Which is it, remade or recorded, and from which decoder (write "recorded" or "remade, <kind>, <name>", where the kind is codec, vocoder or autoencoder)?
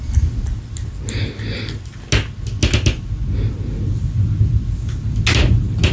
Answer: recorded